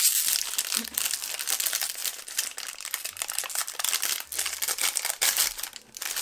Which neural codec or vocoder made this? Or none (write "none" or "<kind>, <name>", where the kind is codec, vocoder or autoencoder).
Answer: none